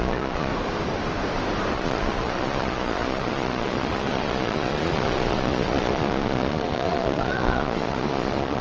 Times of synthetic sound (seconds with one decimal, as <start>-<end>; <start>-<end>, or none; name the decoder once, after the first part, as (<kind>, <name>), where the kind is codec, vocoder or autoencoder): 0.0-0.5 (vocoder, Vocos); 1.7-8.6